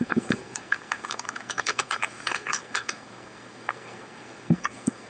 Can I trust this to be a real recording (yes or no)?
no